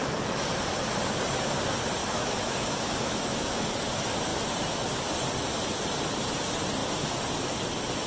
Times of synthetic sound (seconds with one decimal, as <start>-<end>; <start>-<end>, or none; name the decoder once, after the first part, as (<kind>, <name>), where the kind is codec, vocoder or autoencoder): 2.0-3.6 (autoencoder, DAC-VAE)